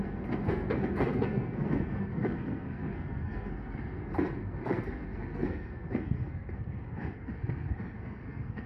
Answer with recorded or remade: remade